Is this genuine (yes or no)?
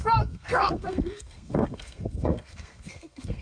no